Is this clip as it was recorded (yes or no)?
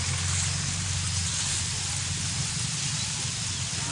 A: yes